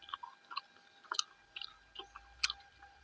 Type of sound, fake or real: real